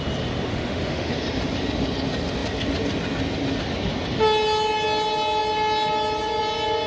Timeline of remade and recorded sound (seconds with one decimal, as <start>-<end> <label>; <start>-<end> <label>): 0.0-0.5 recorded; 0.5-1.1 remade; 1.1-6.9 recorded